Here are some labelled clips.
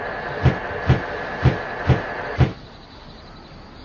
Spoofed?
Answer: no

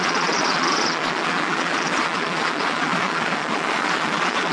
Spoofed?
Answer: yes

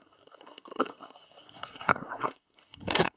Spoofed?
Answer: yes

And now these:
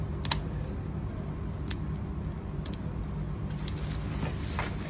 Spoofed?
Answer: no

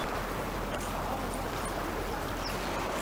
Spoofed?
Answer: yes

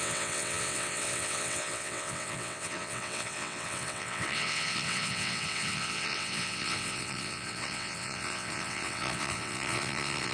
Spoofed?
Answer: yes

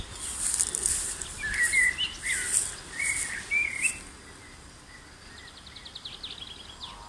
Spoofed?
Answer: no